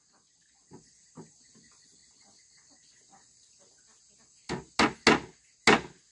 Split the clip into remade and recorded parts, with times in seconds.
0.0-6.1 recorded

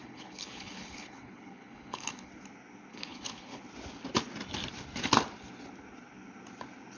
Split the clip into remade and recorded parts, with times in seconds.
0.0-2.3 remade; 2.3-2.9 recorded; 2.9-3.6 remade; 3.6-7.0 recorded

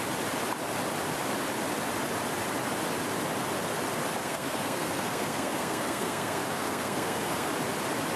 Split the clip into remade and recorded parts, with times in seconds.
0.0-4.2 recorded; 4.2-7.5 remade; 7.5-8.2 recorded

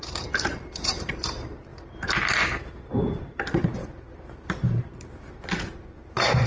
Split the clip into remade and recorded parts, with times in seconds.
0.0-6.5 remade

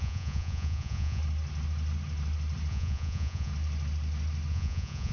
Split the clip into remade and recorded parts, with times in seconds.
0.0-1.2 remade; 1.2-2.7 recorded; 2.7-3.5 remade; 3.5-4.5 recorded; 4.5-5.1 remade

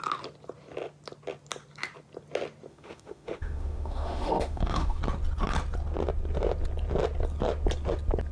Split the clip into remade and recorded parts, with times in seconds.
0.0-2.7 recorded; 2.7-5.0 remade; 5.0-8.3 recorded

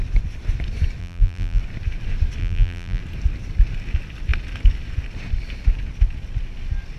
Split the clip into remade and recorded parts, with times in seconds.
0.0-1.0 recorded; 1.0-1.6 remade; 1.6-2.4 recorded; 2.4-3.0 remade; 3.0-7.0 recorded